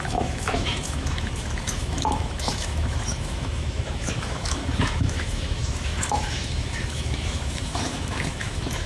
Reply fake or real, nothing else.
fake